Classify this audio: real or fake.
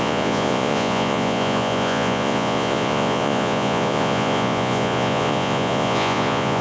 fake